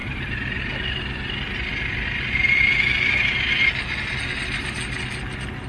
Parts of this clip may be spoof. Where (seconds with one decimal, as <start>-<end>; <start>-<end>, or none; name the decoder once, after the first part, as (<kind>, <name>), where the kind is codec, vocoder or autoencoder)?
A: none